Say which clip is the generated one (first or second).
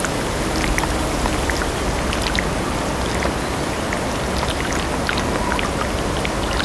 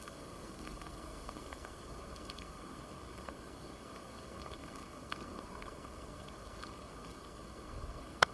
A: second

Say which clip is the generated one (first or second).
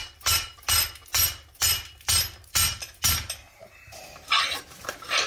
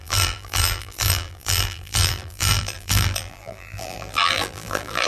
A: second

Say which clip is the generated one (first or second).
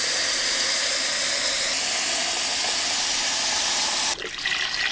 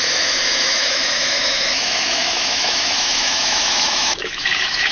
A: second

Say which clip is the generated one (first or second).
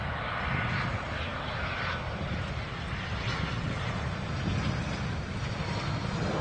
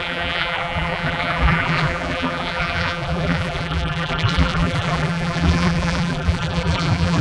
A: second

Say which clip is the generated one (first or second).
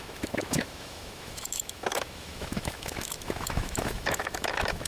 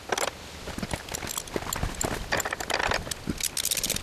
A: first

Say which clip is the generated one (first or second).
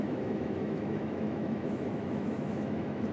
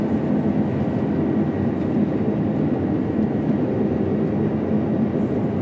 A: first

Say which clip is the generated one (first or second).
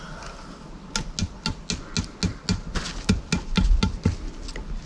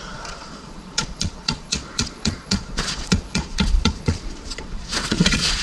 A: second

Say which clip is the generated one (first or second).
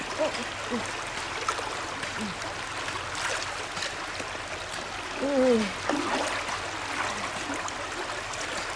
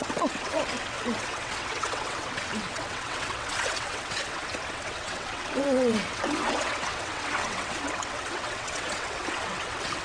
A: second